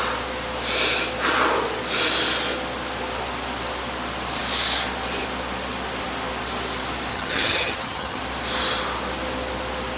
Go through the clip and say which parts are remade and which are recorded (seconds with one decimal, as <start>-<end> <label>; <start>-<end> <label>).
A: 0.0-7.1 recorded; 7.1-8.2 remade; 8.2-10.0 recorded